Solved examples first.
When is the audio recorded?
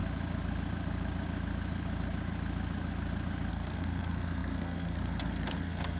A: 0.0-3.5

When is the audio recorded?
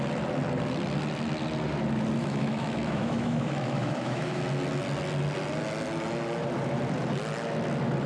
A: 0.0-2.2; 4.4-8.1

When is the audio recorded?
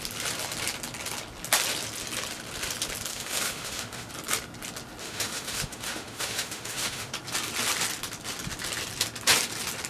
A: 0.0-3.1; 4.1-5.0; 7.1-9.9